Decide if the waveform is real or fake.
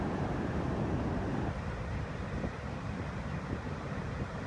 fake